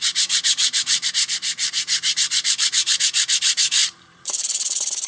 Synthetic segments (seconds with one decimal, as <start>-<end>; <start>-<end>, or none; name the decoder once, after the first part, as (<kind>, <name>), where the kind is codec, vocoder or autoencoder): 0.0-3.0 (vocoder, BigVGAN v2); 3.8-5.1